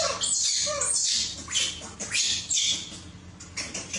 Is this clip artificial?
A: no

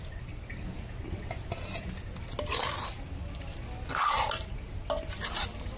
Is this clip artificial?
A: no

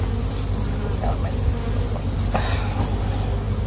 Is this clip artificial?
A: no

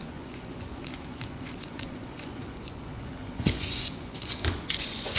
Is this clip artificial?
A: yes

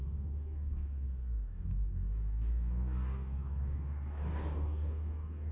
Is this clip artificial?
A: yes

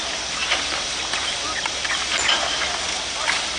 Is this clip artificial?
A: yes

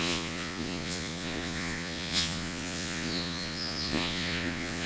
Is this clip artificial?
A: yes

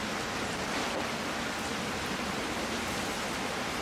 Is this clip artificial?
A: no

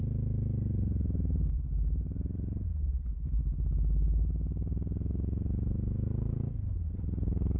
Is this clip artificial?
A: no